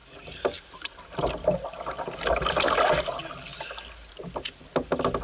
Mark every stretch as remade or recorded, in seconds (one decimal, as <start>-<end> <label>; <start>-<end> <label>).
0.0-5.2 recorded